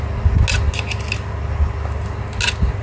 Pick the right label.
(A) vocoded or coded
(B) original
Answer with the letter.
B